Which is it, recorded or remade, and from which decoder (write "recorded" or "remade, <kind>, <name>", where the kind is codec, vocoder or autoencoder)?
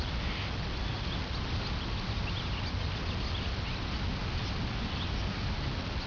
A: recorded